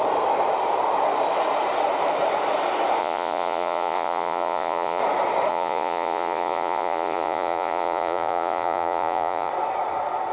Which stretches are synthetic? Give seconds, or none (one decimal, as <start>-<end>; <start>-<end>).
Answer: 3.0-5.0; 5.5-9.5